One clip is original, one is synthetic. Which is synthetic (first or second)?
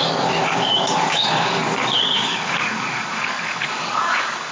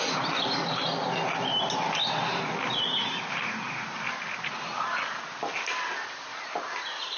first